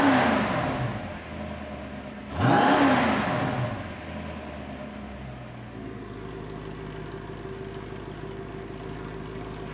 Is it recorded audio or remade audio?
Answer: recorded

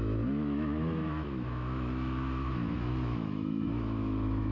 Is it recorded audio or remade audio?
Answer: remade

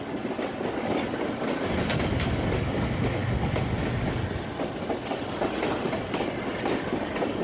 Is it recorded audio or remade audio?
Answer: recorded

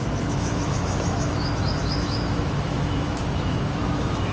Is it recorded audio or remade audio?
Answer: remade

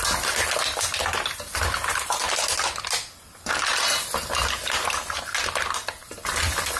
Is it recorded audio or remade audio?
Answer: recorded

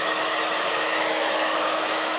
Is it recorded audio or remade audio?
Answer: remade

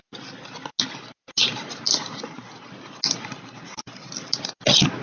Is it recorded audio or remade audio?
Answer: recorded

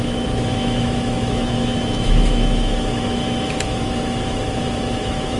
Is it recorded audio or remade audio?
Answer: remade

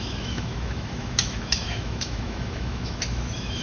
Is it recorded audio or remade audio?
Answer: remade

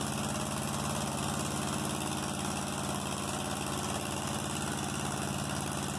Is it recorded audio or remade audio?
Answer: recorded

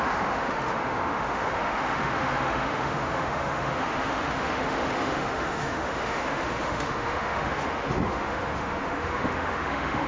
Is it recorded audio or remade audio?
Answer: remade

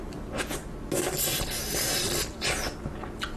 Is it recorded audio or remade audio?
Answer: recorded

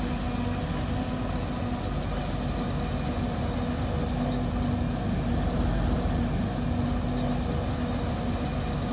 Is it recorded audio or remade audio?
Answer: recorded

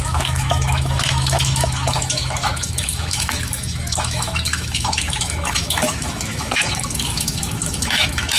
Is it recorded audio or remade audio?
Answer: remade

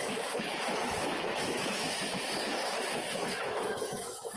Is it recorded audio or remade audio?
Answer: remade